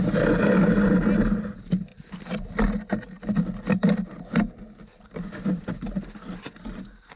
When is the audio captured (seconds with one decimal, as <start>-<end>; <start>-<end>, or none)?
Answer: 0.0-7.2